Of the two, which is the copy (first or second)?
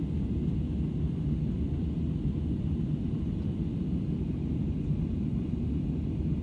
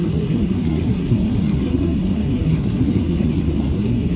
second